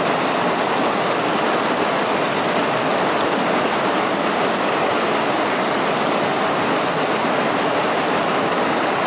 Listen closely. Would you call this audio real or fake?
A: real